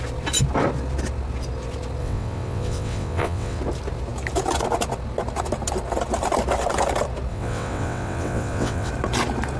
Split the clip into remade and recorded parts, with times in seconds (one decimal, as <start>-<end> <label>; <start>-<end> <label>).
0.0-2.0 recorded; 2.0-3.6 remade; 3.6-7.3 recorded; 7.3-8.9 remade; 8.9-9.6 recorded